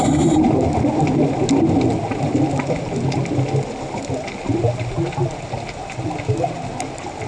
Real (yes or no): yes